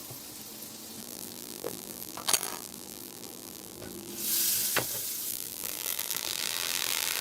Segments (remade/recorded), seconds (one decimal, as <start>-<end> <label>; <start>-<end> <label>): 0.0-1.0 recorded; 1.0-4.1 remade; 4.1-5.3 recorded; 5.3-7.2 remade